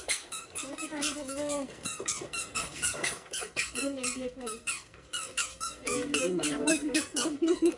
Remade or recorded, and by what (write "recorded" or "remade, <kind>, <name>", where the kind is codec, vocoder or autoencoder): remade, codec, SNAC